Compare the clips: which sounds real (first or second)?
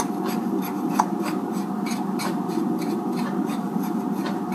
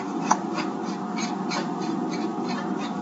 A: second